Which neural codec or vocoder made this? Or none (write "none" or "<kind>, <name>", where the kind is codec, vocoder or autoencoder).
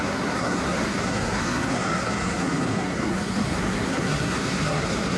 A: codec, SNAC